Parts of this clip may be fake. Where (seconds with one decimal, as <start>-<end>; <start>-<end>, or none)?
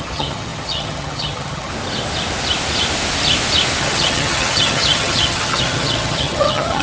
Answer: 0.0-1.7; 3.8-6.8